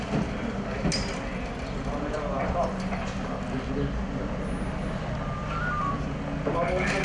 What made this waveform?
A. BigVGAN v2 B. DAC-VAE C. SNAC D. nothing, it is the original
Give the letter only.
D